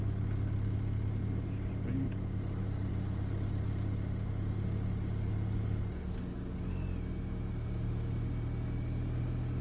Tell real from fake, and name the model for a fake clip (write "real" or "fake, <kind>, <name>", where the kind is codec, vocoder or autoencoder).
real